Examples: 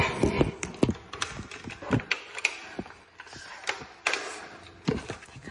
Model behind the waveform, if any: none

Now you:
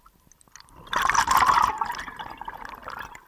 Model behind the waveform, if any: none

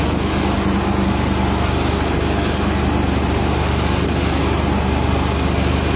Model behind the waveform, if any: none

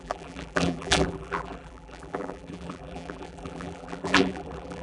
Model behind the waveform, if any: vocoder, BigVGAN v2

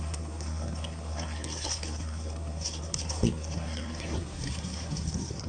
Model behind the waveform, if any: codec, SNAC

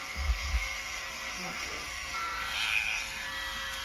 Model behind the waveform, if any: codec, SNAC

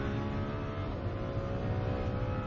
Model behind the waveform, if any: none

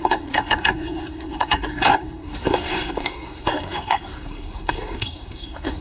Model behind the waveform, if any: codec, SNAC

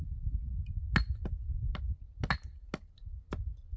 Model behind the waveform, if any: none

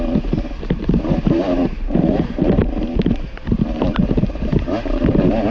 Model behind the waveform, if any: vocoder, BigVGAN v2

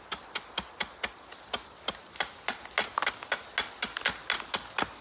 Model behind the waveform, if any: none